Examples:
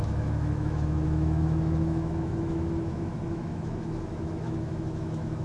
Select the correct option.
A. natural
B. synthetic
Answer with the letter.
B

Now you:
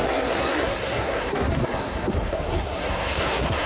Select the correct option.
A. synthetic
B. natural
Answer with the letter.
A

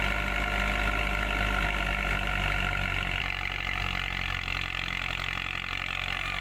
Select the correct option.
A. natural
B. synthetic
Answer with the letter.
A